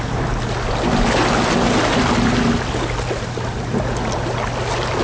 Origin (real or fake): real